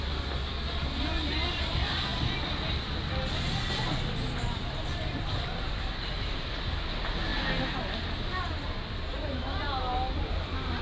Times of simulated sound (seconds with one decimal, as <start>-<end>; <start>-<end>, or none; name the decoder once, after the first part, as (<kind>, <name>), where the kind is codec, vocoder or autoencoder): none